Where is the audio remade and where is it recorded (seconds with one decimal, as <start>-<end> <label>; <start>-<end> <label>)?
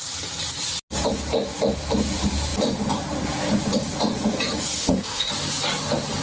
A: 0.0-4.8 recorded; 4.8-5.3 remade; 5.3-6.2 recorded